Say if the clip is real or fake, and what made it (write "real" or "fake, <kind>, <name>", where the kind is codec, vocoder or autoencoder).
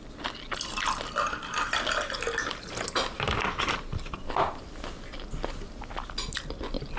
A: real